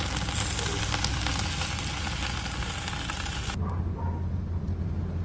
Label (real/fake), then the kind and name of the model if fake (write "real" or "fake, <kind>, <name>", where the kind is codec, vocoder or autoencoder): real